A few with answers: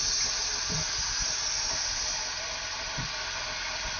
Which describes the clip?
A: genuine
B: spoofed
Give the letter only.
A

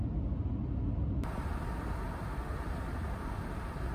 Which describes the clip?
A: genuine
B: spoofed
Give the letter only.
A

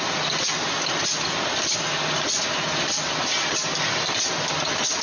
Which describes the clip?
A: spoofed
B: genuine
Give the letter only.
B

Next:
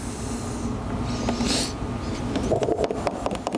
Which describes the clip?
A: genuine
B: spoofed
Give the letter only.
A